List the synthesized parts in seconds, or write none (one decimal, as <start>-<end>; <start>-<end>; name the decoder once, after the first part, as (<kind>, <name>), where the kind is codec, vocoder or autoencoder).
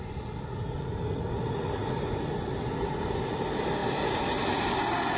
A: none